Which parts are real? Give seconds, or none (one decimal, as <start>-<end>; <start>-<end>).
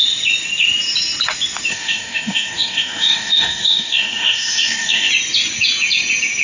0.0-1.7; 5.1-6.4